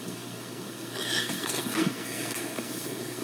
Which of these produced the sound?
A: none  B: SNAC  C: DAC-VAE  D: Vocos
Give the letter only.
B